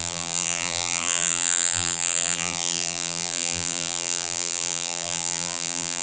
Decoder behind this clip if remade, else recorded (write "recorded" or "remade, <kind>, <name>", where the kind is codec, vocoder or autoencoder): remade, vocoder, BigVGAN v2